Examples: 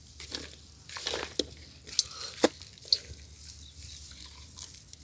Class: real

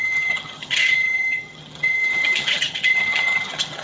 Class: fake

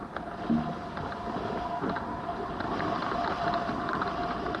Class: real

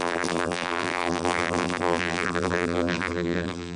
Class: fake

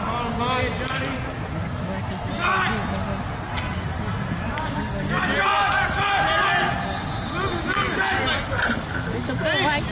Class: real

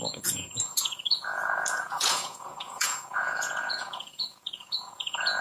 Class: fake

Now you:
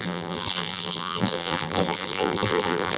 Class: fake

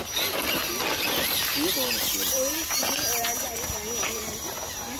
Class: real